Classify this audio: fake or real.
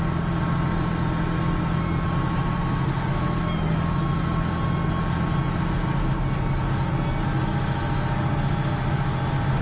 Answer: real